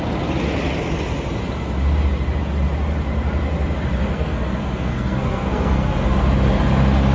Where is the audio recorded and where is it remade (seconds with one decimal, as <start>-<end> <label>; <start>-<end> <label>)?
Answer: 0.0-4.1 recorded; 4.1-6.2 remade; 6.2-7.1 recorded